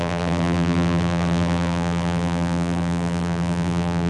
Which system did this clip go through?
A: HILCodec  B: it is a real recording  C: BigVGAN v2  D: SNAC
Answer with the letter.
C